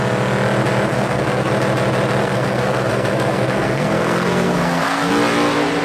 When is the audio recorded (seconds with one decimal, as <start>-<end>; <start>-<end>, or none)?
0.0-0.9; 1.5-2.2; 5.1-5.8